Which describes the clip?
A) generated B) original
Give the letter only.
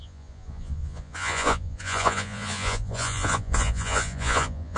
A